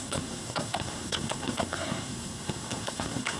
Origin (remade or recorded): remade